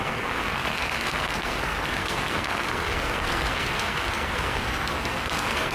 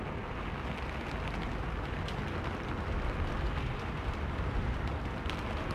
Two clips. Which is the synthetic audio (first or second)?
first